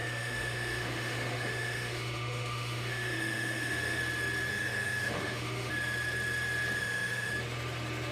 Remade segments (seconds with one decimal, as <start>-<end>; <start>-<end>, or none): 0.0-4.0; 4.5-5.7; 6.8-7.3